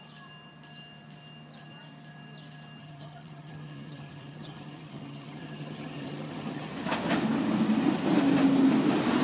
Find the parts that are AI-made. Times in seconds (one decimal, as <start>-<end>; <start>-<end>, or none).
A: 2.8-6.7